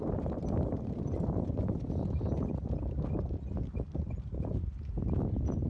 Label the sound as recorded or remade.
recorded